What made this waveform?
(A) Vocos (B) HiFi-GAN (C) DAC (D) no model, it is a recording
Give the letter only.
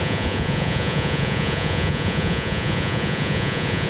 A